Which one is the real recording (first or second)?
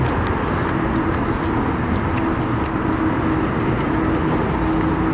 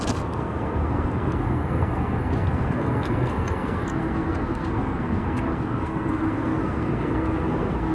first